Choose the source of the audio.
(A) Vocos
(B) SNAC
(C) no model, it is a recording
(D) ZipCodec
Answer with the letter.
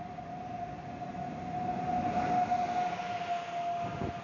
C